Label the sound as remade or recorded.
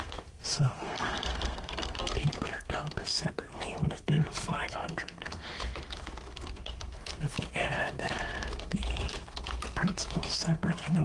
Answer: remade